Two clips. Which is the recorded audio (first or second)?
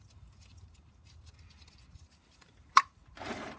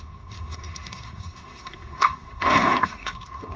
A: first